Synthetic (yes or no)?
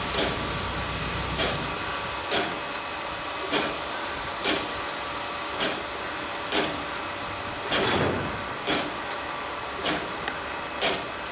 no